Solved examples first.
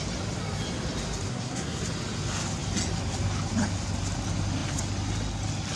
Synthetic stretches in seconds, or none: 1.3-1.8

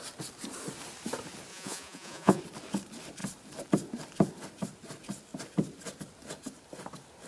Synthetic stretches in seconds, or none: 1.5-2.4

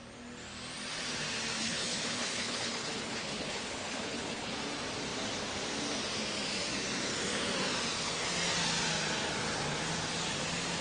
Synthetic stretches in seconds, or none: 1.6-4.5

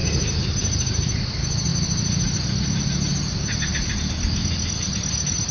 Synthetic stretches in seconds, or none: 0.0-1.2

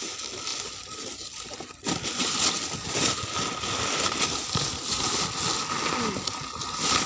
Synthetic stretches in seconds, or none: 0.5-1.4

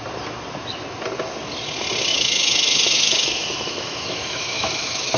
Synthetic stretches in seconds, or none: 2.1-5.2